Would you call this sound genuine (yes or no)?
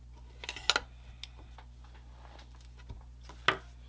yes